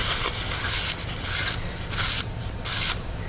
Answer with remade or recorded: recorded